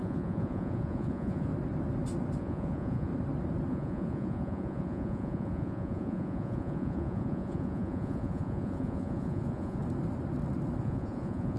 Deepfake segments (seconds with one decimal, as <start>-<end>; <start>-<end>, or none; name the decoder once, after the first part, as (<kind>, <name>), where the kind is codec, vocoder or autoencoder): 0.0-1.5 (vocoder, Vocos); 2.4-3.1; 3.7-9.8; 10.8-11.6